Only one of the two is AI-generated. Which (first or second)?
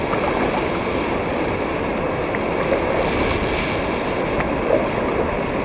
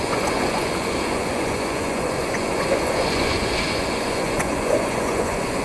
second